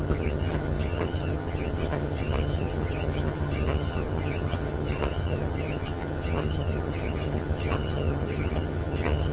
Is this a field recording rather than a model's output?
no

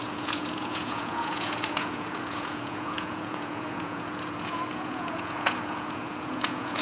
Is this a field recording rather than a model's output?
no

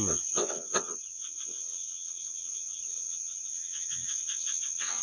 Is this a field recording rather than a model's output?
no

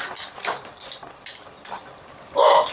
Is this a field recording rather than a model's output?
yes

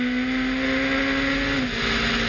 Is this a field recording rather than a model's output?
yes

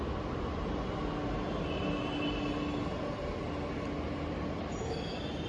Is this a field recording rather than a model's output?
yes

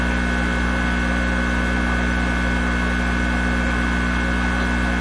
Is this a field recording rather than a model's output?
yes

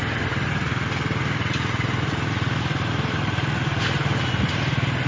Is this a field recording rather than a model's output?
yes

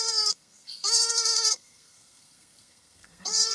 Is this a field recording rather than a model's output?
no